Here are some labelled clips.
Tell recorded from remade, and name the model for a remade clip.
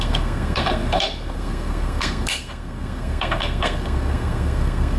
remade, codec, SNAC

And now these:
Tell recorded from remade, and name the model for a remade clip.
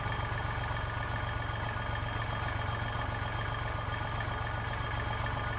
recorded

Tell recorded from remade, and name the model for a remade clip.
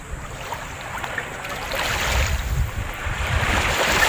remade, vocoder, BigVGAN v2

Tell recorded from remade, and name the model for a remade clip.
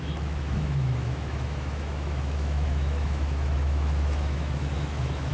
remade, autoencoder, DAC-VAE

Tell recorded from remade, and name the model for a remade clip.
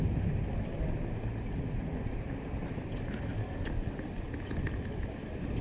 recorded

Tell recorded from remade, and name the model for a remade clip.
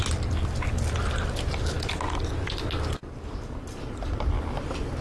recorded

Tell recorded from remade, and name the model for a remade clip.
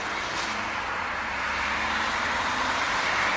recorded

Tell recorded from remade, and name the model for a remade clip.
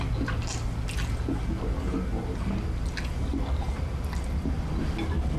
recorded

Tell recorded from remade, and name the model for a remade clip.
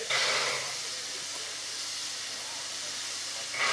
recorded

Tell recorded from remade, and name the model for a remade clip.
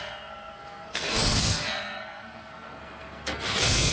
remade, codec, SNAC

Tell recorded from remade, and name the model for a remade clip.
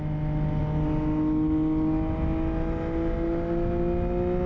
recorded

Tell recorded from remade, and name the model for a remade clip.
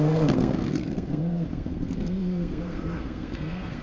remade, codec, SNAC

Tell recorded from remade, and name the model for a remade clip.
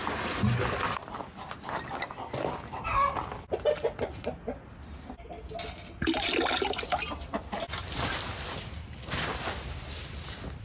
recorded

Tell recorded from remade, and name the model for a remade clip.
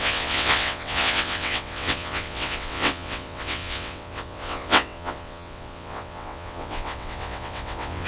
remade, vocoder, WaveNeXt